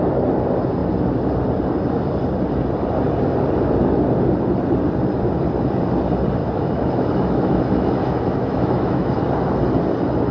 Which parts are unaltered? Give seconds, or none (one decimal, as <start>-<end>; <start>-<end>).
0.0-6.4; 9.1-10.3